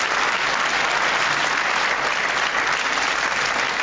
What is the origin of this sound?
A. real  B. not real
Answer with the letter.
A